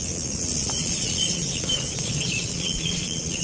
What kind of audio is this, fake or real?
fake